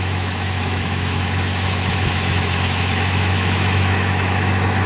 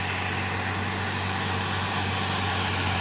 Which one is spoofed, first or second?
first